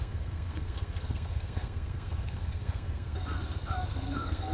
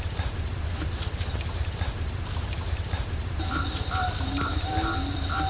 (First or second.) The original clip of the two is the second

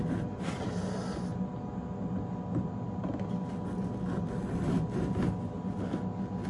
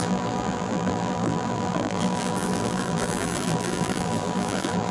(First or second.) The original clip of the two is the first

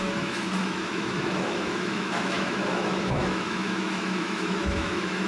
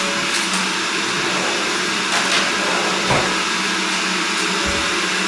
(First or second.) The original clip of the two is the second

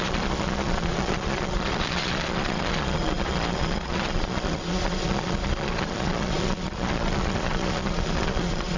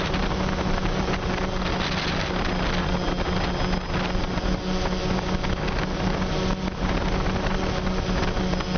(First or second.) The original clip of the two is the second